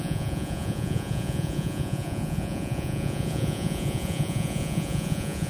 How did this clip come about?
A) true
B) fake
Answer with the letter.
B